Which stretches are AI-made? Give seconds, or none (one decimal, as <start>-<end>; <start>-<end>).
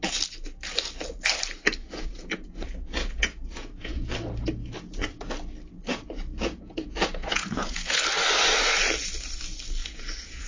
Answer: 1.8-4.1; 4.6-5.3; 5.9-8.0; 9.8-10.5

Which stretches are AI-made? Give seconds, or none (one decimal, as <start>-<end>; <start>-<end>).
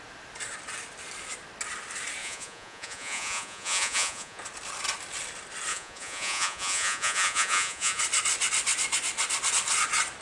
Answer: 2.2-4.4; 5.7-8.0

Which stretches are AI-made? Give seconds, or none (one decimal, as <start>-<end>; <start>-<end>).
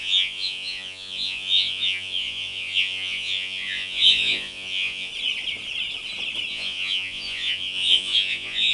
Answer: 0.0-5.1; 6.5-8.7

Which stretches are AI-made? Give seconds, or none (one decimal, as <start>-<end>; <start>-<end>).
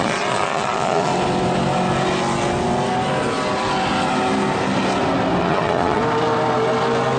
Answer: 0.0-1.1; 5.4-6.0